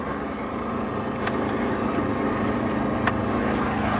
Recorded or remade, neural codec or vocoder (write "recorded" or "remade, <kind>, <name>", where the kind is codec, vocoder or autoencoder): recorded